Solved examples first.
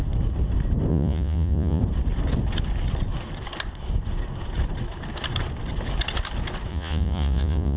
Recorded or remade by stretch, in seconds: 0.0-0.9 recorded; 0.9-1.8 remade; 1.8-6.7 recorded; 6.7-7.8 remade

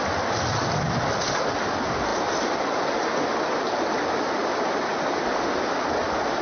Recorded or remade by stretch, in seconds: 0.0-6.4 recorded